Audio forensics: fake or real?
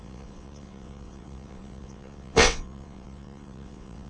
fake